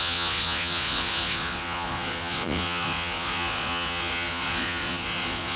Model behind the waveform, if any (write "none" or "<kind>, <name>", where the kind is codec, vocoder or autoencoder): vocoder, Vocos